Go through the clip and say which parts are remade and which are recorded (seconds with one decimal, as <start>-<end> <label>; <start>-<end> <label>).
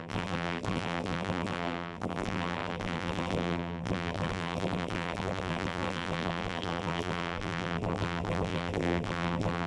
0.0-9.7 remade